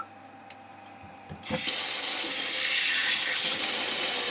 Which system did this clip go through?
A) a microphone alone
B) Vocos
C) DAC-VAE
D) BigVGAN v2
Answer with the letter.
A